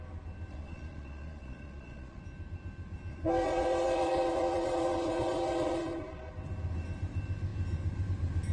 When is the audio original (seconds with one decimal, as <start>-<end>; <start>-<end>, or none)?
0.0-0.5; 2.2-3.1; 6.3-8.5